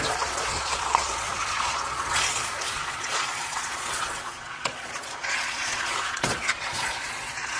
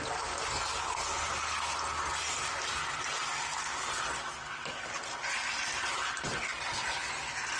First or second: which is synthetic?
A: first